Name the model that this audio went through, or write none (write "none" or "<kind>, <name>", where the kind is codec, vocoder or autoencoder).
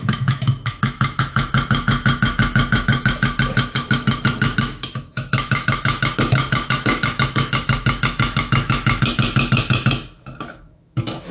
autoencoder, DAC-VAE